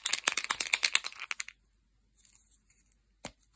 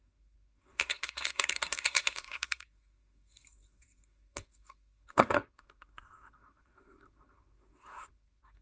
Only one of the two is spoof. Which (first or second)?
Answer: second